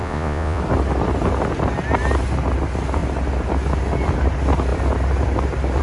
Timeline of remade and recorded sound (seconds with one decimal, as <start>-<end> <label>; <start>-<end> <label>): 0.0-0.6 remade; 0.6-5.8 recorded